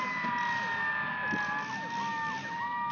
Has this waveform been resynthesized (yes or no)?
no